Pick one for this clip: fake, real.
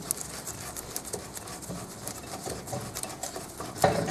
real